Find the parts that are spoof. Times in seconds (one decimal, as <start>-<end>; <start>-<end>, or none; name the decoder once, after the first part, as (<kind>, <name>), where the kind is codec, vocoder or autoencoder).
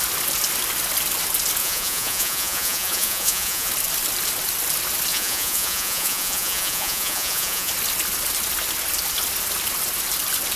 1.6-3.7 (vocoder, Vocos); 5.1-7.7